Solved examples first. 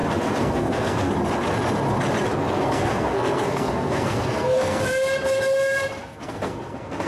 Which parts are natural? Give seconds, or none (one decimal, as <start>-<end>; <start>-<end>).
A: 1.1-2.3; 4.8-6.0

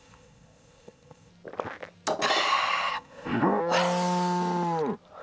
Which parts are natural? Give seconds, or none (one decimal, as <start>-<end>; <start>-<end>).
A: 1.3-2.9; 3.6-5.2

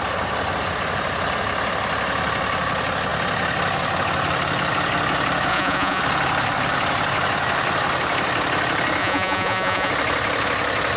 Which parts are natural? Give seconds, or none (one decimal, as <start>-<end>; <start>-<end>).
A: 0.0-5.5; 6.0-9.0; 9.9-11.0